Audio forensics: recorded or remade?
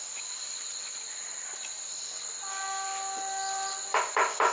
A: recorded